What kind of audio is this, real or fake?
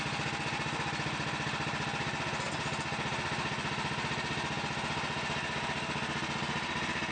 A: real